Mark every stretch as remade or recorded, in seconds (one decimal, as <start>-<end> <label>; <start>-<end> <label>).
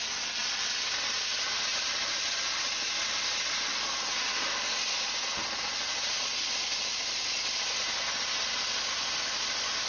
0.0-1.7 recorded; 1.7-2.5 remade; 2.5-9.9 recorded